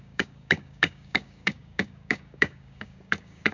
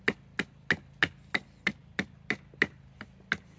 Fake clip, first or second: first